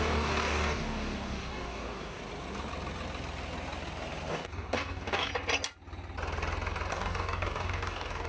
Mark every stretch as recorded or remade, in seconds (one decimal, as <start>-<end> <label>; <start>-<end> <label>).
0.0-2.2 remade; 2.2-4.3 recorded; 4.3-5.3 remade; 5.3-6.9 recorded; 6.9-8.3 remade